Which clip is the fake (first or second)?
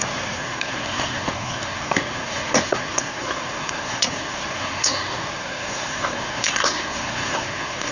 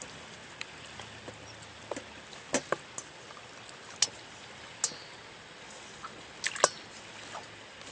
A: first